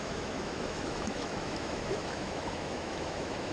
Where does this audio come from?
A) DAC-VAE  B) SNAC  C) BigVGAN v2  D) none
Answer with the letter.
A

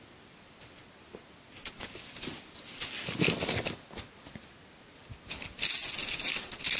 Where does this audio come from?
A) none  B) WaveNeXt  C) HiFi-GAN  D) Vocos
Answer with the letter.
A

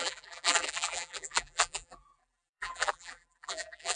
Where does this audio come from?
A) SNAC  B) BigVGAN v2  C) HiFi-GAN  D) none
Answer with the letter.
B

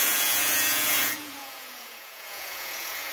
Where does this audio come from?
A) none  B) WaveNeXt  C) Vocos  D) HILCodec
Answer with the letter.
C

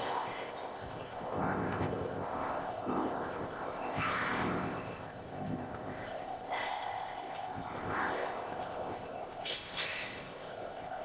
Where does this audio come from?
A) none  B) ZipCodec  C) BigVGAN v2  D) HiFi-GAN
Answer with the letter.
B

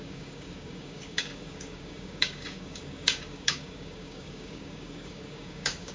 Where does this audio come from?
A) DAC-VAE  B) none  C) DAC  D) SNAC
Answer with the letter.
C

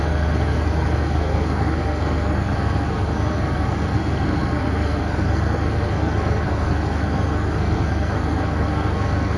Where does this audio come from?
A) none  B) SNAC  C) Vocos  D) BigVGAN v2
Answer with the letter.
B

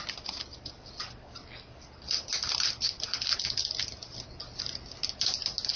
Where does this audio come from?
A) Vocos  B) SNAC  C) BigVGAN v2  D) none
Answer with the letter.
D